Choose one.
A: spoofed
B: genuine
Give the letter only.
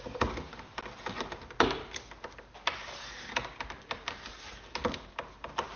B